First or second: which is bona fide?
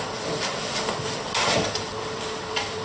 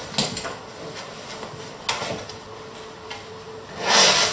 second